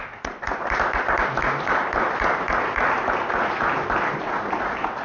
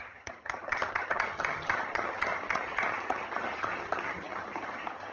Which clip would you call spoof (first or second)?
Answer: second